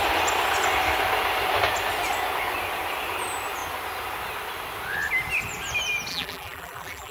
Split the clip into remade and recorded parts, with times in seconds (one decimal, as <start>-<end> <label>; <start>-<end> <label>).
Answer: 0.0-6.1 recorded; 6.1-7.1 remade